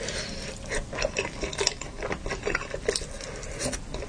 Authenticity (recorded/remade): recorded